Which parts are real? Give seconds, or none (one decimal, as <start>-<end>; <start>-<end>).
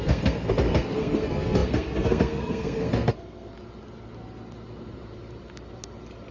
3.5-6.3